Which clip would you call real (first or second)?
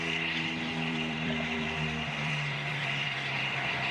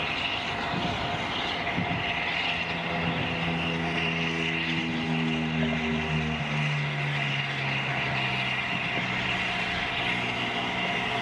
second